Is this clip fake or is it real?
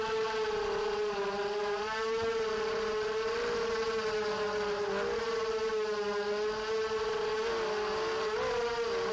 real